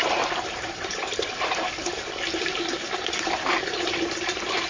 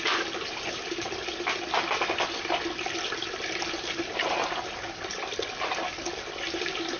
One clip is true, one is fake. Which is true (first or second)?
second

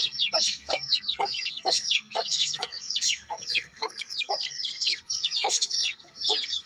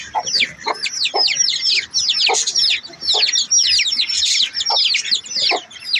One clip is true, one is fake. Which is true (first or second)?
second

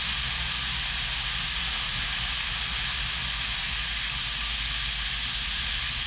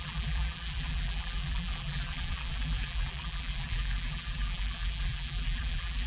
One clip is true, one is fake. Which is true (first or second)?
first